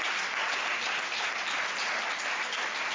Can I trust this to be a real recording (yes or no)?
yes